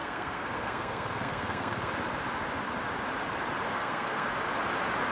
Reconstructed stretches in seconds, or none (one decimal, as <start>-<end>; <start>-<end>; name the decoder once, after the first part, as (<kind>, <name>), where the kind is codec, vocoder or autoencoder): 0.0-1.9 (codec, SNAC); 3.7-4.3